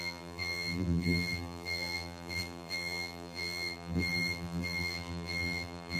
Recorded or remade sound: remade